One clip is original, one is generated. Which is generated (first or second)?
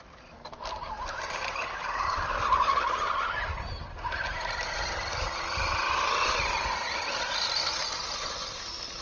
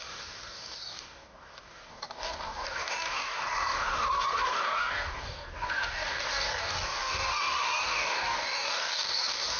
second